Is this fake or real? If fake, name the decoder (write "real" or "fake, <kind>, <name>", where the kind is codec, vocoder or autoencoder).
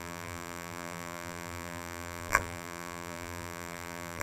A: fake, vocoder, BigVGAN v2